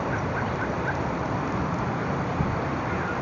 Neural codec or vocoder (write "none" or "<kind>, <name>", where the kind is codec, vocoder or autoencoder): none